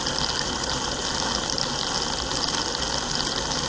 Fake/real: real